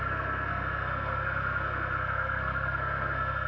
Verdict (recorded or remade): remade